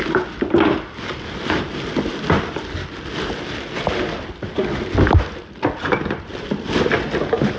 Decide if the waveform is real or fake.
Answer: real